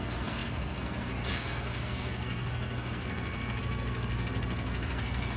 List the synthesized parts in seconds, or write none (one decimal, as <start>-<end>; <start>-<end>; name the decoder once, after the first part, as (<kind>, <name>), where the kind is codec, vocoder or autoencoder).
0.0-5.4 (codec, SNAC)